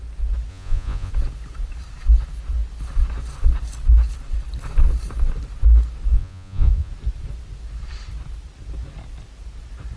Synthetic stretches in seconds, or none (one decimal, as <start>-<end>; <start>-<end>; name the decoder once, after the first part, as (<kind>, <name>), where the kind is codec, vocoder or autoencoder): 0.5-1.1 (vocoder, Vocos); 6.1-6.9